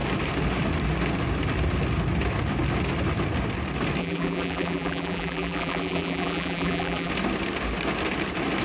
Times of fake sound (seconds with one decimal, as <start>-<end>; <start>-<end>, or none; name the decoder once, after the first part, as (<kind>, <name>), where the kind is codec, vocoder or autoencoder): 4.0-7.1 (vocoder, BigVGAN v2)